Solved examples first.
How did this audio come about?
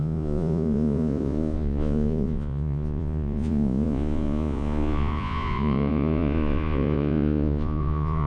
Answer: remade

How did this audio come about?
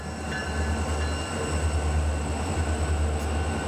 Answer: recorded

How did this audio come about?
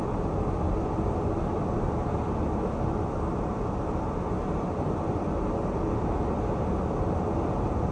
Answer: recorded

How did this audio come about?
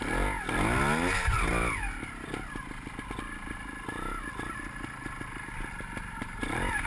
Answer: recorded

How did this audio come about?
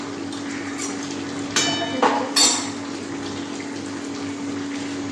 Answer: recorded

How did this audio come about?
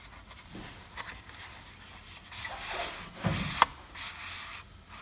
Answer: recorded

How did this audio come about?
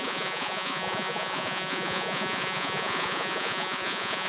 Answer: remade